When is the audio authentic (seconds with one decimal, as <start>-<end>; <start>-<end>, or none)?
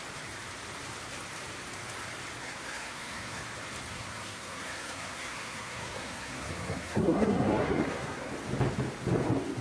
0.0-2.4; 3.4-3.9; 8.3-9.6